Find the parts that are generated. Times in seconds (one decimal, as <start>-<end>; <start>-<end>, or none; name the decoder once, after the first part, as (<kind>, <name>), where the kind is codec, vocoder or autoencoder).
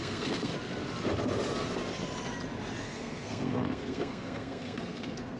0.0-0.5 (codec, SNAC); 2.8-5.4